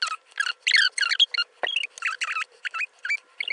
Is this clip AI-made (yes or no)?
no